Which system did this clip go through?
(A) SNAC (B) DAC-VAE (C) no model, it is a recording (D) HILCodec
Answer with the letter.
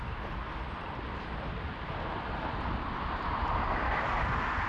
C